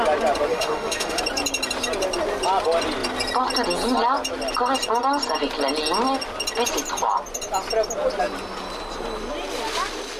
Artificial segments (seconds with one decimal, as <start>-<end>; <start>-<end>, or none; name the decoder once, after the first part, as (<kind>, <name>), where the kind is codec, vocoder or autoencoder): 0.5-1.2 (autoencoder, DAC-VAE)